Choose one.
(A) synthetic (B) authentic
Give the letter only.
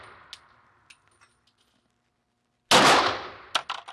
B